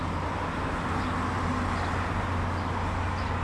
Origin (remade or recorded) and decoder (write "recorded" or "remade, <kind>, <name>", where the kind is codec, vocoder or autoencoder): recorded